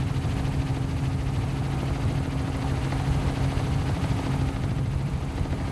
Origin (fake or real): real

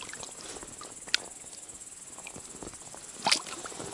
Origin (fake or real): real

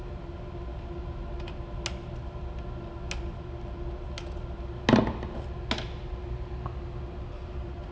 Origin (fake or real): real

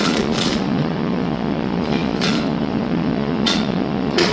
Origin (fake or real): fake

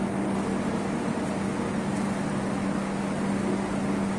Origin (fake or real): real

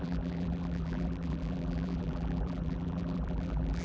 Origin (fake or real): fake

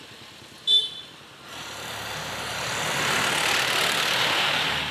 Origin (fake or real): fake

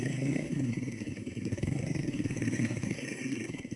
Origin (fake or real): fake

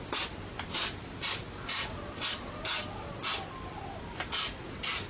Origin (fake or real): real